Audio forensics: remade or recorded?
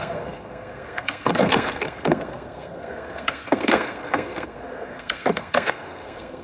remade